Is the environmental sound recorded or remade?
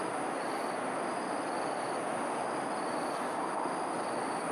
recorded